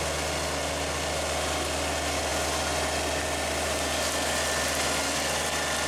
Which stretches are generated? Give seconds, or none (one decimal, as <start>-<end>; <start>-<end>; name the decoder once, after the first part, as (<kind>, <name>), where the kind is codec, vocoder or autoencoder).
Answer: none